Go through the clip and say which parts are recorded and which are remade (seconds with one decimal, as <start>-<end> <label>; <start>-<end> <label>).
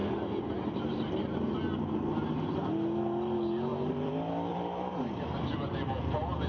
0.0-1.0 remade; 1.0-3.7 recorded; 3.7-4.9 remade; 4.9-6.5 recorded